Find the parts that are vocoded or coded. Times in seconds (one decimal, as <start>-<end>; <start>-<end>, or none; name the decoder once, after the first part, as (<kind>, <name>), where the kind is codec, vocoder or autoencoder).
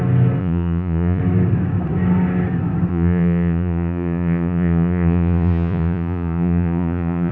0.4-1.2 (vocoder, Vocos); 2.9-7.3